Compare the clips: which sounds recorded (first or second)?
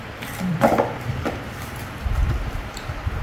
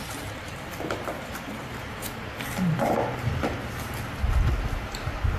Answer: second